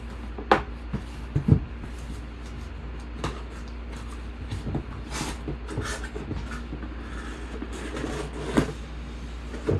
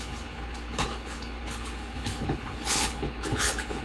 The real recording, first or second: first